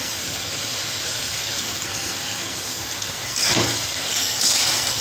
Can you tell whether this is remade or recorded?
remade